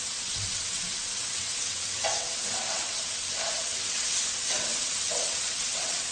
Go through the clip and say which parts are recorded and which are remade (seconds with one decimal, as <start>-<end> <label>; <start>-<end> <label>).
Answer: 0.0-6.1 remade